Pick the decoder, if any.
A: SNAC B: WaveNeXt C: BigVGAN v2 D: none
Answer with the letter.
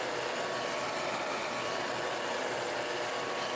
D